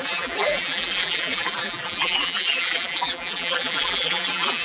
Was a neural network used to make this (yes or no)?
yes